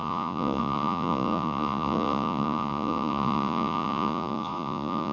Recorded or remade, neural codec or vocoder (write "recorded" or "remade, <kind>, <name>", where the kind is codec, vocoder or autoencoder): remade, vocoder, Vocos